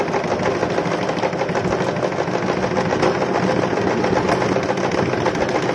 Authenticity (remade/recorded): recorded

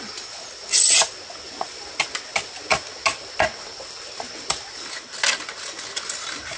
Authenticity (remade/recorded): recorded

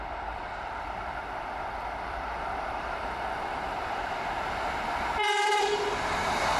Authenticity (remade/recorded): remade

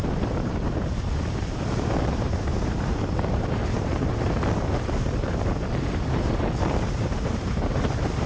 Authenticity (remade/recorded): remade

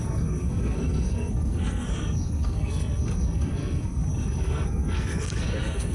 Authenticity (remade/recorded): remade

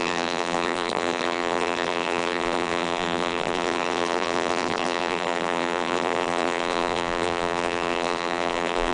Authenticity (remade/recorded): remade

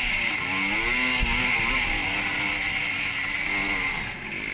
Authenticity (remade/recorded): recorded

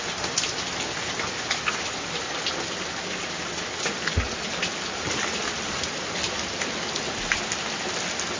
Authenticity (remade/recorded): recorded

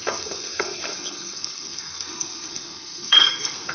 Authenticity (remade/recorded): remade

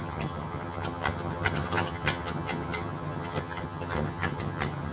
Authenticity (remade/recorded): remade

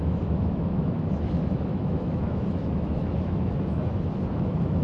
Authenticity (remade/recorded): remade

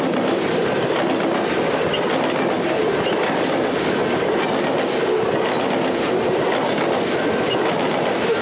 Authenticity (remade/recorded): recorded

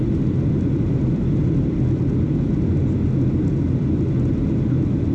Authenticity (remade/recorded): recorded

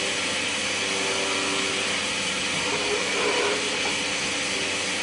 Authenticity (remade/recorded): recorded